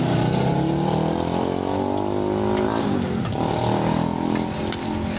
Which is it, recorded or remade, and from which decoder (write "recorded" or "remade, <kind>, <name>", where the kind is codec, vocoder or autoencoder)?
recorded